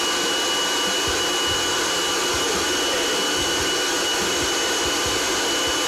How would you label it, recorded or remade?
recorded